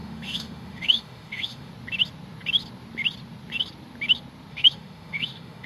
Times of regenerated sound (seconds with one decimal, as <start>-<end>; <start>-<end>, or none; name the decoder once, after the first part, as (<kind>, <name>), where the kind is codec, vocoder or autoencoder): 0.0-1.7 (autoencoder, DAC-VAE); 4.5-5.7